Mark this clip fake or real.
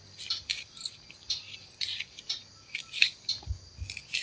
real